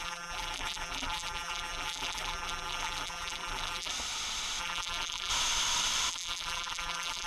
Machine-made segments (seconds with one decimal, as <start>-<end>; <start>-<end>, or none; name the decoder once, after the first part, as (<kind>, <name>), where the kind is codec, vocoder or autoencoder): 0.0-3.9 (vocoder, BigVGAN v2); 4.6-5.3; 6.1-7.3